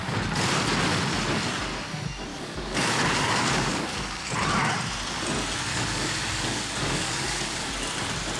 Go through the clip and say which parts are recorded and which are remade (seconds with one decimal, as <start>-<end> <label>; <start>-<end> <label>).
0.0-2.3 recorded; 2.3-4.3 remade; 4.3-5.7 recorded; 5.7-7.7 remade; 7.7-8.4 recorded